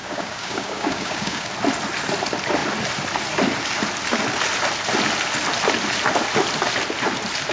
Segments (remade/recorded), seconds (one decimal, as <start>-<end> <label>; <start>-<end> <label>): 0.0-1.5 remade; 1.5-7.5 recorded